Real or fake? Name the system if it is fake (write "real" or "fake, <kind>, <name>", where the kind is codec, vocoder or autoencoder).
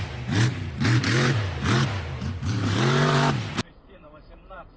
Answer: fake, vocoder, BigVGAN v2